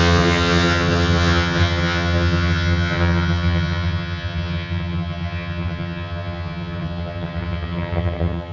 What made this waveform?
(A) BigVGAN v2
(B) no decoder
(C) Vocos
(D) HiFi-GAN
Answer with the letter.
D